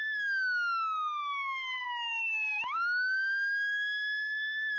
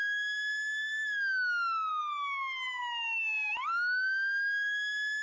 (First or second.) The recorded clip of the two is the second